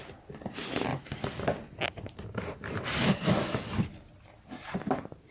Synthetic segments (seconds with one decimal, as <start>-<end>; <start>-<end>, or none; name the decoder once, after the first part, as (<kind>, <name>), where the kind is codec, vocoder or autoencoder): none